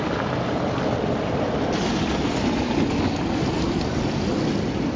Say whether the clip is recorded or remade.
recorded